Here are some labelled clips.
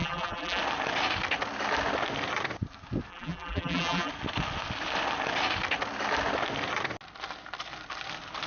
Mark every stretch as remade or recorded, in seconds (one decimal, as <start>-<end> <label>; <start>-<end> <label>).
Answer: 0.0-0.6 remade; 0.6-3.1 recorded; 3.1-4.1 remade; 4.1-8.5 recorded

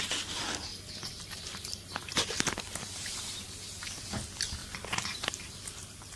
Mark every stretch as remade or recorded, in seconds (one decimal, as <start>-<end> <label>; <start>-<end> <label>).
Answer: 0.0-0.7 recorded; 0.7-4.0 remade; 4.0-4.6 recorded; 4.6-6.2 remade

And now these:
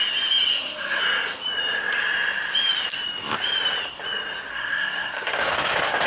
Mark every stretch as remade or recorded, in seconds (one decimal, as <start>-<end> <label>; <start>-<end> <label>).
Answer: 0.0-0.5 recorded; 0.5-1.0 remade; 1.0-4.5 recorded; 4.5-5.5 remade; 5.5-6.1 recorded

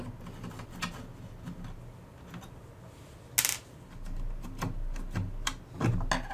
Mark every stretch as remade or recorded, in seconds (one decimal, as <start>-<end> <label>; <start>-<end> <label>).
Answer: 0.0-6.3 recorded

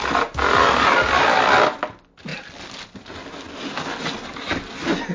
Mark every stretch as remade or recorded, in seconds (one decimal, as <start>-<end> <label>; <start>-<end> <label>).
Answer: 0.0-5.1 recorded

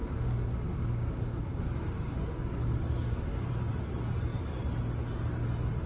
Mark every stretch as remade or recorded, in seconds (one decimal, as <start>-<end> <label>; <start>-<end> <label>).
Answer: 0.0-3.5 remade; 3.5-5.9 recorded

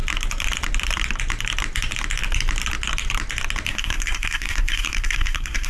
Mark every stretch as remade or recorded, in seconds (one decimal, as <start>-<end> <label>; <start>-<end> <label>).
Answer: 0.0-3.7 recorded; 3.7-5.7 remade

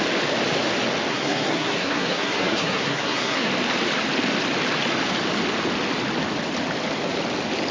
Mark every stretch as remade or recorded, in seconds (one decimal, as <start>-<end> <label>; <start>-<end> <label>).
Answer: 0.0-1.1 recorded; 1.1-3.5 remade; 3.5-7.7 recorded